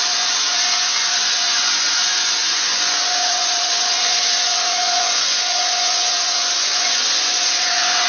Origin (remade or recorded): remade